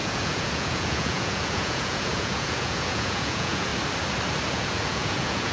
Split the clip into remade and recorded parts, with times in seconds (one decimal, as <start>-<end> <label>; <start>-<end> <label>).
0.0-3.7 remade; 3.7-4.5 recorded; 4.5-5.5 remade